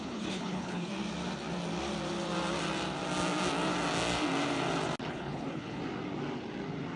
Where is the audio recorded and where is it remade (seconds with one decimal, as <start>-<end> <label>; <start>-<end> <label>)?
0.0-0.9 remade; 0.9-5.1 recorded; 5.1-5.8 remade; 5.8-7.0 recorded